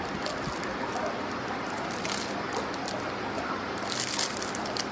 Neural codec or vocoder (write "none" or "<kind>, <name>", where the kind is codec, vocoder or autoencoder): none